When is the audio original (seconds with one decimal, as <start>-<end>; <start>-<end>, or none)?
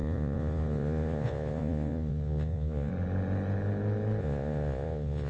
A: 2.9-4.2